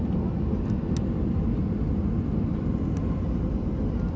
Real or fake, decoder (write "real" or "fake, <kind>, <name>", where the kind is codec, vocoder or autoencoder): real